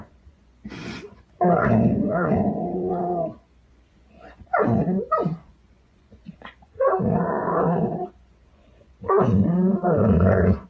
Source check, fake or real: fake